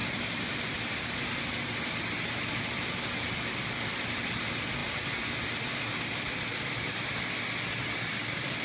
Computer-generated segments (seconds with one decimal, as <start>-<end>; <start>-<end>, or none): none